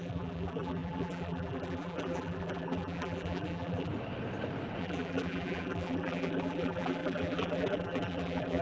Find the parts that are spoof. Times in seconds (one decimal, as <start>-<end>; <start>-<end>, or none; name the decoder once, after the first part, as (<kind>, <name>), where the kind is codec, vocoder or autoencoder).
0.0-3.9 (vocoder, BigVGAN v2); 4.8-8.6